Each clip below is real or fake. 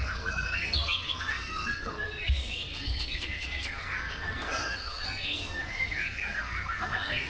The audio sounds fake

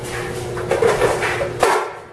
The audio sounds real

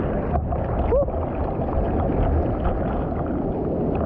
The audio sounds real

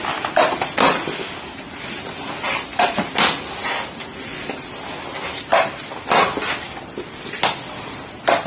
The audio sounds real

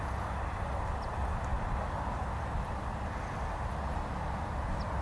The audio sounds real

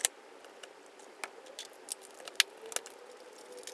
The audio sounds real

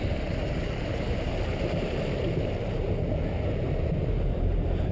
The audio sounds fake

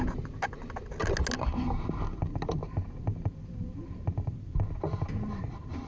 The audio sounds real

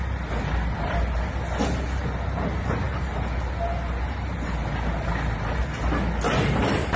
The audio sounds real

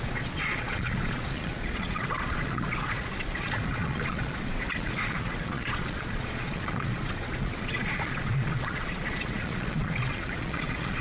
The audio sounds fake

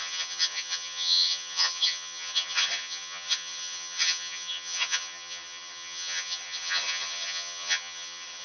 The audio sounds fake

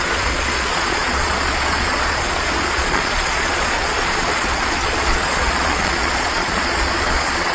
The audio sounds fake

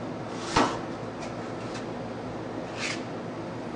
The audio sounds real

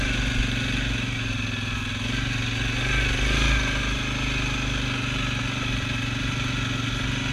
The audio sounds real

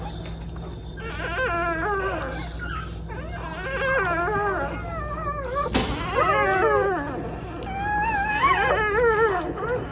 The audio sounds real